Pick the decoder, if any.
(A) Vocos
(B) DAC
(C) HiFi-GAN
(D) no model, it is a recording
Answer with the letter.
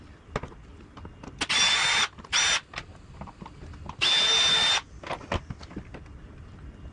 D